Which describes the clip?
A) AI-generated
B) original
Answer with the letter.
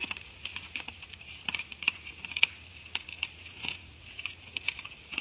A